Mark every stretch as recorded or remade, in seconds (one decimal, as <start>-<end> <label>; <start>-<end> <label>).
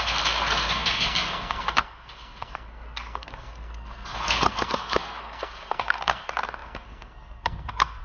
0.0-8.0 remade